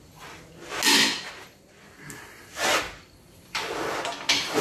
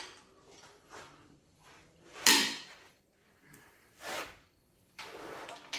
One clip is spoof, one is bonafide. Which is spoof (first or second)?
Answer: second